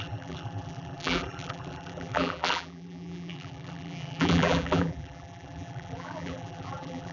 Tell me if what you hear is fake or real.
fake